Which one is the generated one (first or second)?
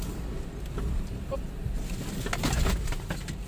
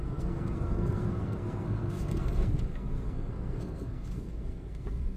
second